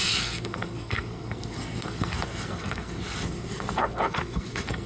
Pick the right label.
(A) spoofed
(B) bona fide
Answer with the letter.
A